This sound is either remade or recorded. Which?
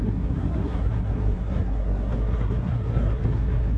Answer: remade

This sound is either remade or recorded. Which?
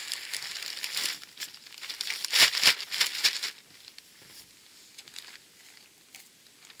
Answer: recorded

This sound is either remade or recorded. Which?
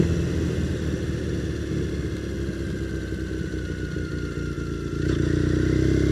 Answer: recorded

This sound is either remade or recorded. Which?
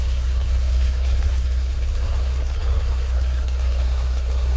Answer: remade